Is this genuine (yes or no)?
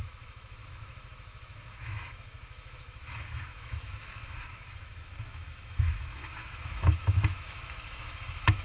no